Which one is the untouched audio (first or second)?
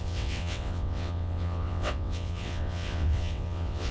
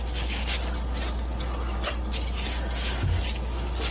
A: second